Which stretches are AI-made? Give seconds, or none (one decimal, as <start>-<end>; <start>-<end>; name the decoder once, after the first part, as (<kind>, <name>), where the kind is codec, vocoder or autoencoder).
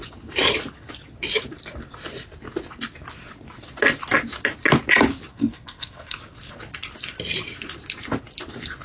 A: 5.3-6.2 (codec, SNAC)